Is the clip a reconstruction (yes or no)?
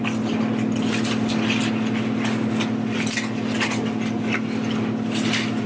no